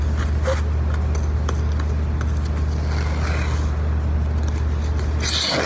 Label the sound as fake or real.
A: real